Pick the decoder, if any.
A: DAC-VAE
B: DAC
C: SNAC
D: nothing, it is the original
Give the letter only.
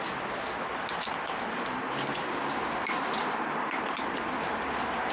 D